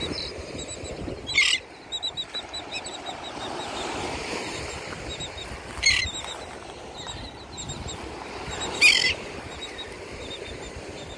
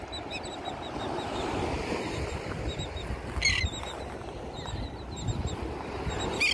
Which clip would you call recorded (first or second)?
second